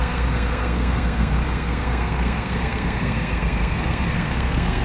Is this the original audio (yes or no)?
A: no